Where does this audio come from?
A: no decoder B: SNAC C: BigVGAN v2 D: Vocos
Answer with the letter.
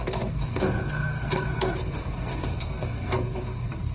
B